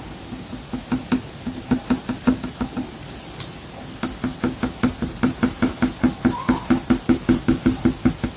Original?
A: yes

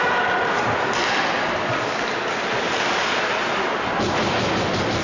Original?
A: yes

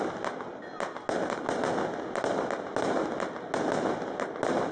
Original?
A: yes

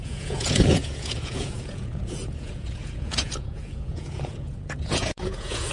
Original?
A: no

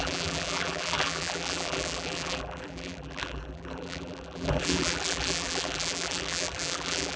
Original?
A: no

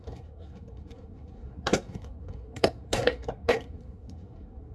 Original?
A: no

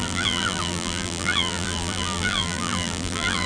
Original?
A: no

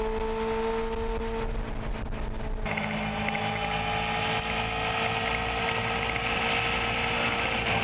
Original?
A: yes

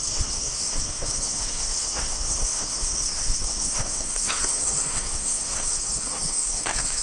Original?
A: no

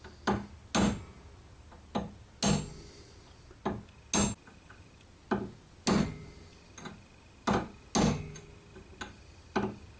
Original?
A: yes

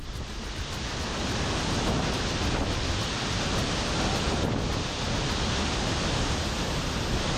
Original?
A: yes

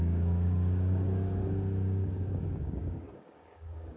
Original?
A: no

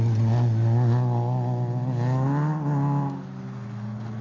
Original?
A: yes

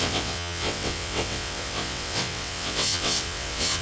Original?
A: no